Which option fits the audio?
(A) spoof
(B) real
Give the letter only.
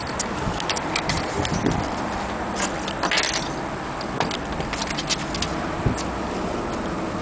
B